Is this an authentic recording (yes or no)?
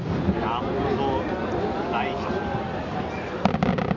yes